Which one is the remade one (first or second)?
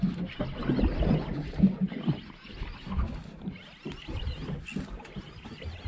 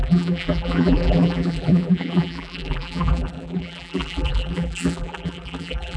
second